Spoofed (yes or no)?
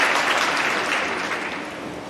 no